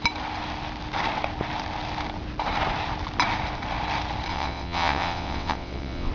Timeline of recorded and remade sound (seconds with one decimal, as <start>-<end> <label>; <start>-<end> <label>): 0.0-4.3 recorded; 4.3-6.1 remade

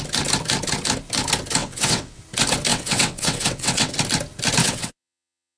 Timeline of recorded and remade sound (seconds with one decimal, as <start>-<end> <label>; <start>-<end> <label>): 0.0-1.6 recorded; 1.6-2.2 remade; 2.2-2.7 recorded; 2.7-3.9 remade; 3.9-4.6 recorded; 4.6-5.6 remade

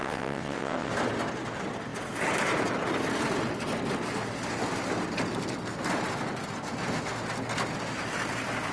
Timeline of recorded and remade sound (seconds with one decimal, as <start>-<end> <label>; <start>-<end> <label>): 0.0-0.9 remade; 0.9-8.7 recorded

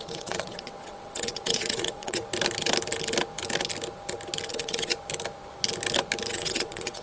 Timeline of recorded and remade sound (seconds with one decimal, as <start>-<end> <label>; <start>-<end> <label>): 0.0-2.2 remade; 2.2-4.5 recorded; 4.5-4.9 remade; 4.9-6.3 recorded; 6.3-7.0 remade